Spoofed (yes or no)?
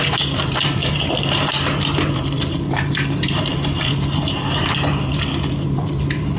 yes